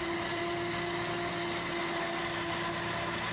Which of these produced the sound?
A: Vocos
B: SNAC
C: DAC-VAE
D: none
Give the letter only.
D